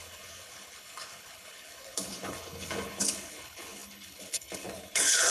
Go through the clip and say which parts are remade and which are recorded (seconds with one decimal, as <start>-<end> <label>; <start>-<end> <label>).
0.0-5.3 remade